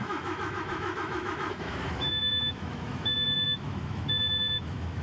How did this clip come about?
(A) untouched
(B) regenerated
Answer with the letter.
B